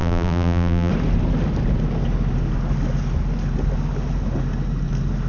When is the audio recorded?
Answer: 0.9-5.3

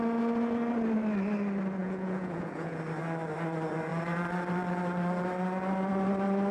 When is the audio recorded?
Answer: 0.0-1.8; 2.8-6.5